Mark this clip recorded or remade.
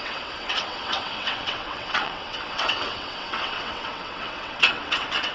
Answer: remade